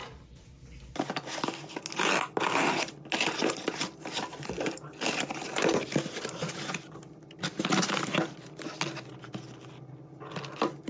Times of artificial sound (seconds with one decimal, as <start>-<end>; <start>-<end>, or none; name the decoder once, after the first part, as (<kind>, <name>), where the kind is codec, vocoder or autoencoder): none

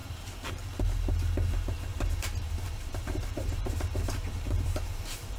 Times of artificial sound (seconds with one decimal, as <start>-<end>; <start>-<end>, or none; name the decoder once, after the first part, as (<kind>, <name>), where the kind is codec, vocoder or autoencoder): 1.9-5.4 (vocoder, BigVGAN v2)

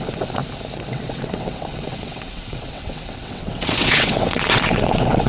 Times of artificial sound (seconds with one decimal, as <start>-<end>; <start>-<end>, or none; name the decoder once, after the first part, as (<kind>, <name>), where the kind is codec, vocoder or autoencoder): 0.0-0.4 (vocoder, WaveNeXt); 0.9-5.3